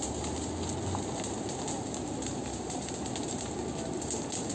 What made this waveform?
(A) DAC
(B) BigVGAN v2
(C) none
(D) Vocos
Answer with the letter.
C